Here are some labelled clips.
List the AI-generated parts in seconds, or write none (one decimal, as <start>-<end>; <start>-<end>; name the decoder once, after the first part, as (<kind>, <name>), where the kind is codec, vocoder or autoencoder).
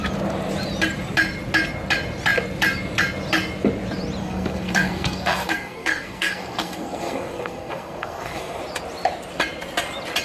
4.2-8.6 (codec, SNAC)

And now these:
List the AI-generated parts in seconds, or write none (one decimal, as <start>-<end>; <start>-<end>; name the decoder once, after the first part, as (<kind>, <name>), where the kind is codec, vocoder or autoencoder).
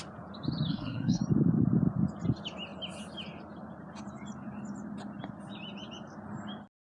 0.7-1.2 (codec, SNAC)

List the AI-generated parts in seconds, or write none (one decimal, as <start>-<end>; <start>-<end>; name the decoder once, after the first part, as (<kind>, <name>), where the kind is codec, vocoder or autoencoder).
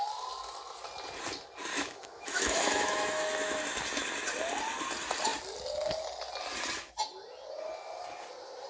1.7-3.6 (autoencoder, DAC-VAE)